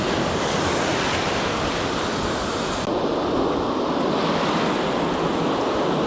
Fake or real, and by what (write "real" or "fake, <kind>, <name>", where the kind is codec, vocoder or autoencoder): real